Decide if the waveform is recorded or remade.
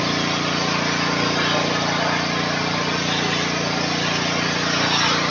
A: recorded